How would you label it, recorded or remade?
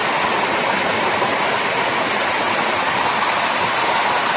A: recorded